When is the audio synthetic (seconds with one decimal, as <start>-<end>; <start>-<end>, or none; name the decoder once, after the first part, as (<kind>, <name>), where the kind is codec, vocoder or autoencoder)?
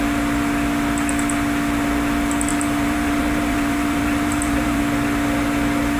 2.5-4.8 (vocoder, BigVGAN v2)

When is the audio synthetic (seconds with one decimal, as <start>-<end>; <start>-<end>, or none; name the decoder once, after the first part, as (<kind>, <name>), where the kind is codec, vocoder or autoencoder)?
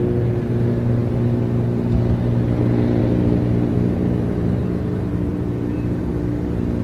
3.0-6.1 (vocoder, BigVGAN v2)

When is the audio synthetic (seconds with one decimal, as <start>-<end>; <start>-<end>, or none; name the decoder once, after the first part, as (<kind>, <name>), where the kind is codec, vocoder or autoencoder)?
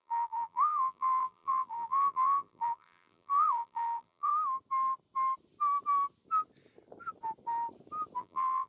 0.0-4.3 (vocoder, BigVGAN v2); 8.2-8.7